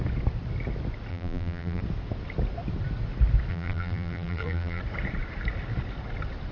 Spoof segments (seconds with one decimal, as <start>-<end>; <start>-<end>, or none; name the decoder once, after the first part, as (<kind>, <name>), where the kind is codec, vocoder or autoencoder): 1.1-1.8 (vocoder, BigVGAN v2); 3.5-4.8